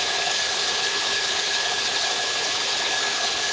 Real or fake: fake